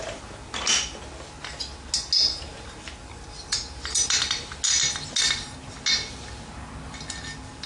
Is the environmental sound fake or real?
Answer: real